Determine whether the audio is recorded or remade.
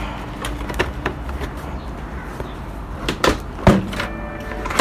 recorded